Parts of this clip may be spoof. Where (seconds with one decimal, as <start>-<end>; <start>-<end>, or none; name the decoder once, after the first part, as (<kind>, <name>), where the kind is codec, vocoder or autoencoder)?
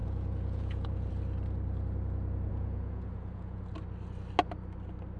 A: 0.0-1.1 (vocoder, Vocos); 2.5-3.6